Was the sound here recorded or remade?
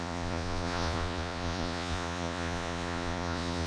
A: remade